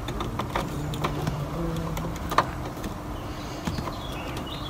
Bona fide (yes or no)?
yes